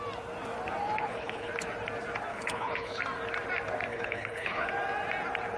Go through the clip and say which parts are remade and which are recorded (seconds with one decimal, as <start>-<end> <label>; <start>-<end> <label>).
0.0-1.0 recorded; 1.0-1.5 remade; 1.5-2.3 recorded; 2.3-3.0 remade; 3.0-3.9 recorded; 3.9-4.7 remade; 4.7-5.6 recorded